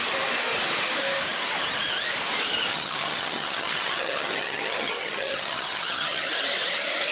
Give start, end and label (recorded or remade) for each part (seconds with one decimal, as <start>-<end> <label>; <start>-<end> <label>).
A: 0.0-2.7 recorded; 2.7-6.3 remade; 6.3-7.1 recorded